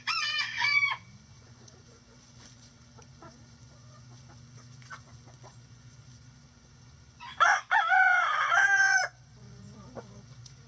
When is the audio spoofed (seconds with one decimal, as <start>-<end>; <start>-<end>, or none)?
0.0-10.7